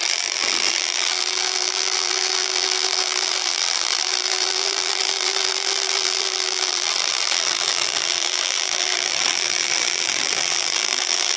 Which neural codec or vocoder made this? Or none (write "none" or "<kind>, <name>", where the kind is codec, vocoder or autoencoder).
vocoder, BigVGAN v2